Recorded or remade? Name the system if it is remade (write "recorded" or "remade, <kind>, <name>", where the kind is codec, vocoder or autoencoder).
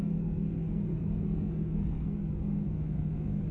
remade, codec, SNAC